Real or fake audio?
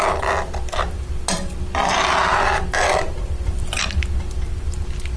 real